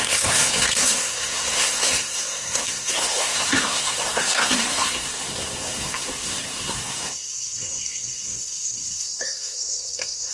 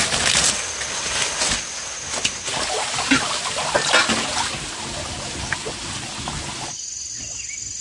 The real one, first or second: second